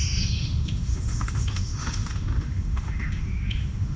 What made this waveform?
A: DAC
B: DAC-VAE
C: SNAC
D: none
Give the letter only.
B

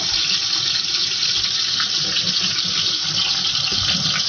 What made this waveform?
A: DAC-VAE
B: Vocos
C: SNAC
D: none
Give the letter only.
D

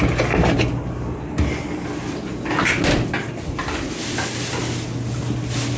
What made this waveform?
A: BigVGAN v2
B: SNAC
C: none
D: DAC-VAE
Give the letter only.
C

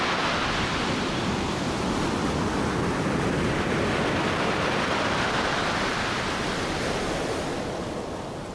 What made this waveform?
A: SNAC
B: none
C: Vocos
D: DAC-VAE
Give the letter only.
B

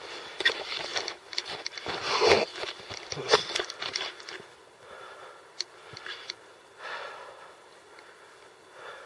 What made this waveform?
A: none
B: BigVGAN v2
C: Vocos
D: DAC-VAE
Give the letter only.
A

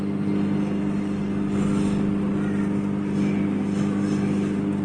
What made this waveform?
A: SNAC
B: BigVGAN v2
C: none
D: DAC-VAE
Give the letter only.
C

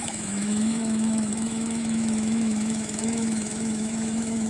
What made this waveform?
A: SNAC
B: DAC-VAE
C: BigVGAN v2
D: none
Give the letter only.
B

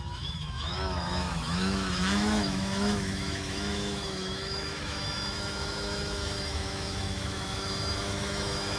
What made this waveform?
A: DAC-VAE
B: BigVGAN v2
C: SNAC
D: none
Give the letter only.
A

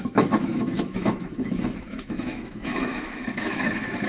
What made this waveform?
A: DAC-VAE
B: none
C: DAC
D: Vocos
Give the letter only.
A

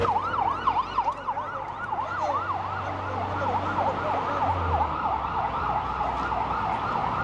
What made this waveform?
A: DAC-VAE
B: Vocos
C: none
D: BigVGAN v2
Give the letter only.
C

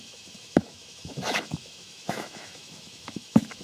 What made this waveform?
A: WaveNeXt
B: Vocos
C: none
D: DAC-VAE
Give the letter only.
D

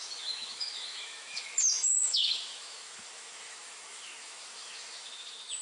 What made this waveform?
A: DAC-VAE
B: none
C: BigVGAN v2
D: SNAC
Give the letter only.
A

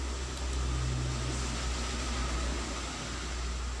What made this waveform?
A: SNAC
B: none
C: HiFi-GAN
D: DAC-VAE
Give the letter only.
B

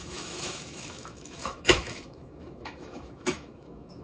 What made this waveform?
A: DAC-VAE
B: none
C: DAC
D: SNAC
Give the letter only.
A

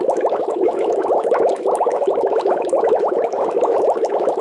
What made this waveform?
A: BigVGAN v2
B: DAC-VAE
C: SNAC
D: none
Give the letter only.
B